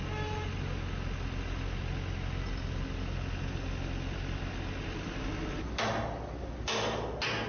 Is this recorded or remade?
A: recorded